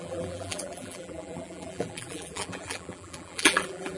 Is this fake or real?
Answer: fake